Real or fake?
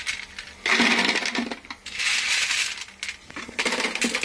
real